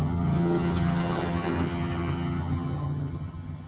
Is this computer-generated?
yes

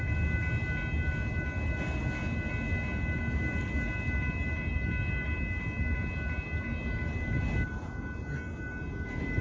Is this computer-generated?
no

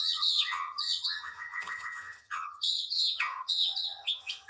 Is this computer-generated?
yes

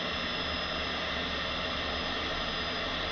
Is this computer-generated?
no